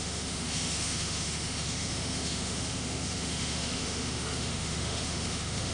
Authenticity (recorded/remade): remade